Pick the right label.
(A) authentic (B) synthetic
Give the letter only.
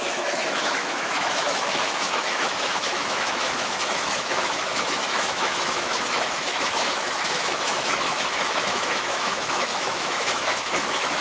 B